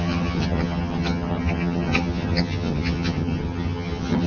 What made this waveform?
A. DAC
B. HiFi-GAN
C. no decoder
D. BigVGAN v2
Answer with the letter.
B